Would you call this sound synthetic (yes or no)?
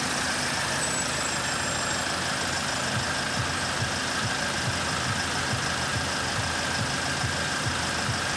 no